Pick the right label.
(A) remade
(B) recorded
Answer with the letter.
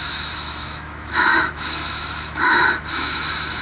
A